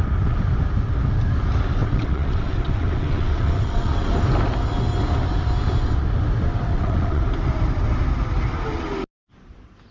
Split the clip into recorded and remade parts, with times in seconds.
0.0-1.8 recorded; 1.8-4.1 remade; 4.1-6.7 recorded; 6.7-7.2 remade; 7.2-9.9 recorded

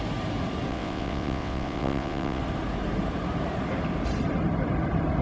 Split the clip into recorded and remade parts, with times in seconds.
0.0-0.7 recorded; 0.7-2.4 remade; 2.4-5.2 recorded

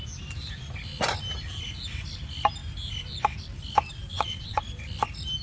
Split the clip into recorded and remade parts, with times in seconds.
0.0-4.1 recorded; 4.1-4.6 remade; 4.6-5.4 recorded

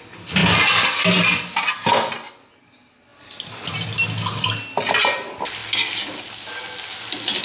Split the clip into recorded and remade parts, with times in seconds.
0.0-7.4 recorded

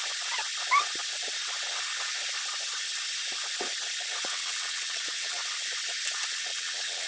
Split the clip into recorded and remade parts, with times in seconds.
0.0-4.2 recorded; 4.2-5.4 remade; 5.4-6.3 recorded; 6.3-7.1 remade